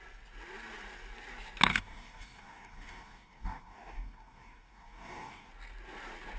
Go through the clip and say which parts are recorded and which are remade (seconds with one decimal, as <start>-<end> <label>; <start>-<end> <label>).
0.0-1.7 recorded; 1.7-5.5 remade; 5.5-6.4 recorded